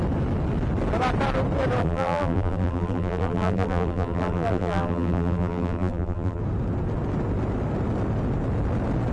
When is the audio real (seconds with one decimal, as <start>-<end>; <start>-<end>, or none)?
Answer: 0.0-1.8; 6.4-9.1